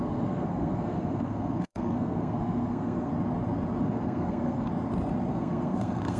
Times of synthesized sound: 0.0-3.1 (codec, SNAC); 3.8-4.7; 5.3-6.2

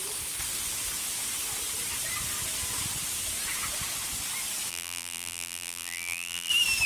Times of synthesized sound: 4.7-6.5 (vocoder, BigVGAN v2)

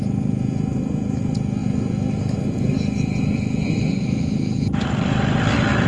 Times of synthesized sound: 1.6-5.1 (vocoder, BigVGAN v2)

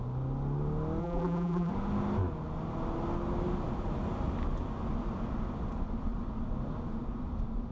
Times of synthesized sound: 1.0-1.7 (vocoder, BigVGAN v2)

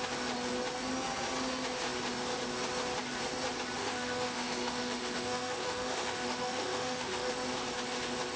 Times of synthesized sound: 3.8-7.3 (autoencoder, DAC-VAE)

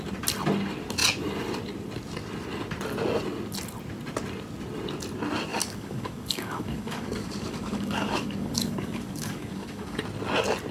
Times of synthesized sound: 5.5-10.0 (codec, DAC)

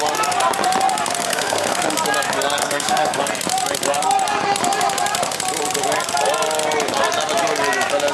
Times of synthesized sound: 1.2-1.8 (codec, SNAC); 2.6-3.2